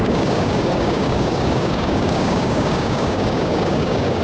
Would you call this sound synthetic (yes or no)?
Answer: yes